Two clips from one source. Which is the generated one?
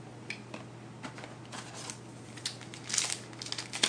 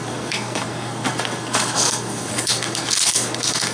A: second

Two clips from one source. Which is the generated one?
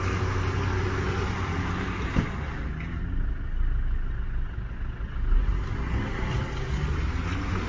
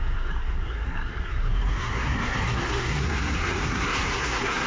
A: second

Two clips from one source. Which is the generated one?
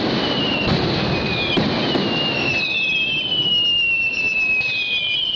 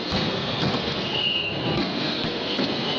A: second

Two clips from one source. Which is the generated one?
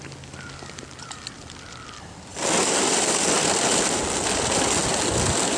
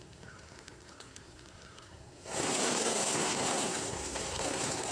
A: second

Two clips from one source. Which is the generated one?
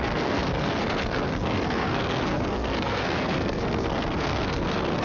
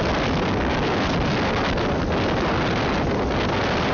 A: first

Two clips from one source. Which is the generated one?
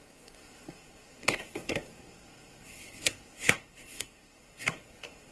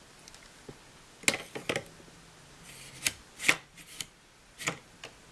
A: first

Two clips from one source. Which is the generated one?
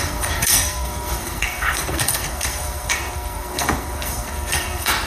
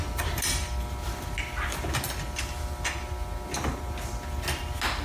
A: first